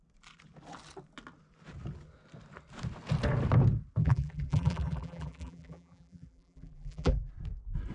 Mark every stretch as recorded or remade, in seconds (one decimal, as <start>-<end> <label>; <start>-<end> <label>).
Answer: 0.0-4.0 recorded; 4.0-7.3 remade; 7.3-7.9 recorded